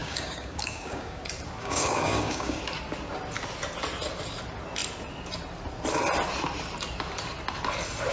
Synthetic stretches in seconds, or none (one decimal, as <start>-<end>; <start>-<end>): 0.0-1.2; 1.6-2.6